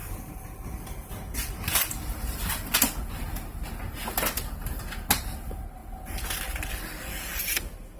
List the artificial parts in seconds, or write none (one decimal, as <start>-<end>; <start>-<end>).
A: none